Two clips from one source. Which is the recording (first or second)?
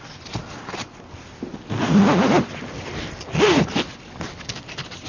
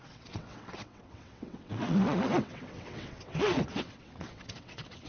first